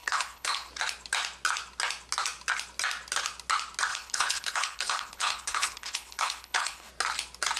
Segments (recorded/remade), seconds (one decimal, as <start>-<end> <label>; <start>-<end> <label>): 0.0-0.7 remade; 0.7-3.9 recorded; 3.9-6.9 remade; 6.9-7.6 recorded